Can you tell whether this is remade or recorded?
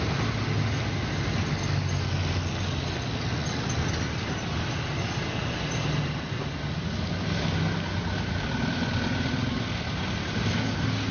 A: recorded